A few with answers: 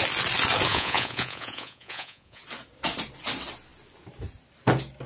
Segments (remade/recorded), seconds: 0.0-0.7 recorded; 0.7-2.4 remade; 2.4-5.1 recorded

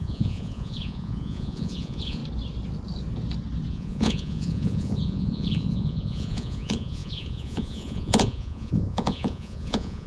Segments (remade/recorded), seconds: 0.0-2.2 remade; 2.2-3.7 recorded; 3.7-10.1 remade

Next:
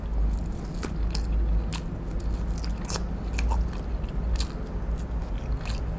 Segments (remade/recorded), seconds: 0.0-6.0 recorded

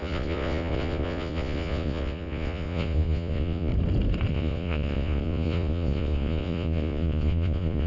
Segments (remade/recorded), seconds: 0.0-3.7 remade; 3.7-4.3 recorded; 4.3-7.9 remade

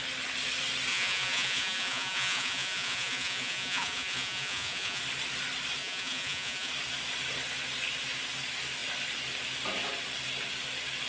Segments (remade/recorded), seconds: 0.0-0.9 recorded; 0.9-5.0 remade; 5.0-5.8 recorded; 5.8-6.7 remade; 6.7-11.1 recorded

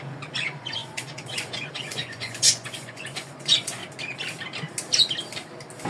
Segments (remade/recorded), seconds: 0.0-3.8 remade; 3.8-5.9 recorded

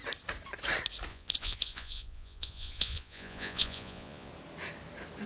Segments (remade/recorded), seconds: 0.0-1.1 recorded; 1.1-4.3 remade; 4.3-5.3 recorded